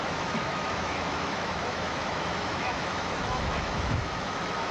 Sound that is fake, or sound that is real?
fake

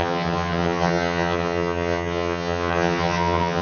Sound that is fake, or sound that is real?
fake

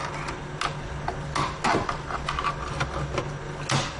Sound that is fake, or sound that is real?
real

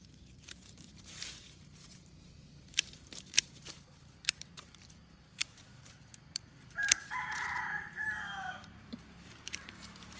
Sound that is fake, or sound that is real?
fake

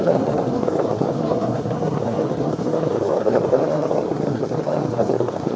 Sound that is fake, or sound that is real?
fake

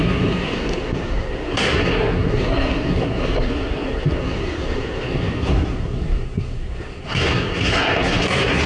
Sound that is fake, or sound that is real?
fake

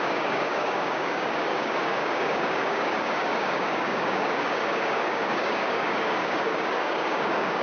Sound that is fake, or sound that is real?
fake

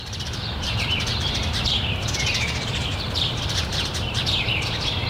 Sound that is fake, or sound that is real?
fake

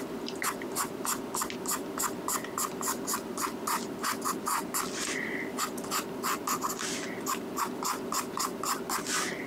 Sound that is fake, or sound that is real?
real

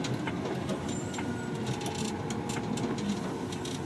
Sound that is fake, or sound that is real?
real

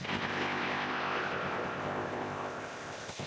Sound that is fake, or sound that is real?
fake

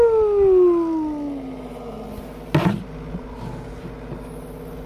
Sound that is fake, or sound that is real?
real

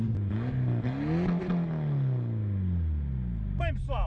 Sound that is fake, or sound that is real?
real